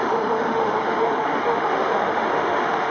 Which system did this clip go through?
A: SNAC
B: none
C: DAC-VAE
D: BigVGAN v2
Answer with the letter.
C